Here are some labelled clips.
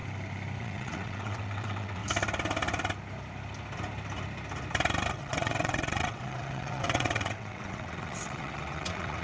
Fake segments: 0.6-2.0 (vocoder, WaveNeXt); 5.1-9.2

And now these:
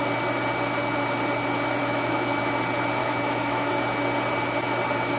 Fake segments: 1.8-2.4 (autoencoder, DAC-VAE); 3.0-3.7

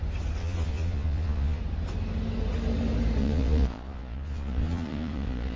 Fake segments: 0.4-1.6 (vocoder, Vocos); 3.2-5.6

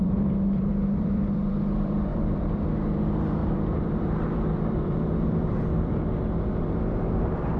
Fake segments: 0.0-7.6 (vocoder, BigVGAN v2)

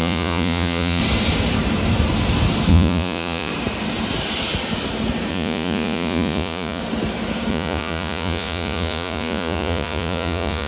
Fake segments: 0.0-1.0 (vocoder, Vocos); 2.7-3.5; 5.3-6.8; 7.5-10.7

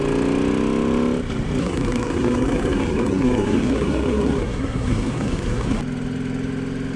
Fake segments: 1.6-5.8 (codec, SNAC)

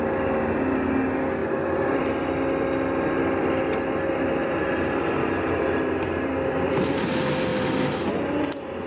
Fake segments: 1.4-2.0 (vocoder, BigVGAN v2); 4.4-6.3

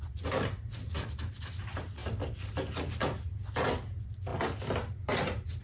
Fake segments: none